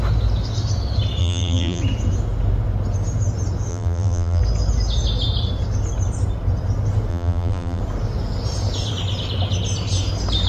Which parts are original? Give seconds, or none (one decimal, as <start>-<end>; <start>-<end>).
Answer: 0.0-1.2; 1.8-3.7; 4.4-7.1; 7.8-10.5